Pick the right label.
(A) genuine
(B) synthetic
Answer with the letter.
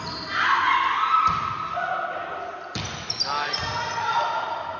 A